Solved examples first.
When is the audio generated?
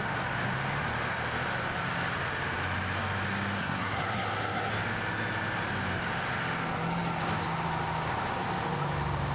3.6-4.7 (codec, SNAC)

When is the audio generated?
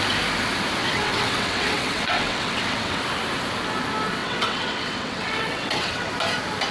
0.8-3.0 (vocoder, WaveNeXt); 4.2-6.1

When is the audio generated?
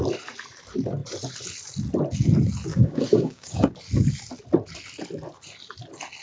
2.7-3.7 (codec, DAC)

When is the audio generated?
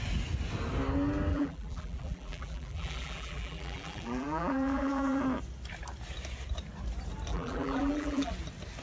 1.3-5.2 (vocoder, BigVGAN v2); 7.3-8.3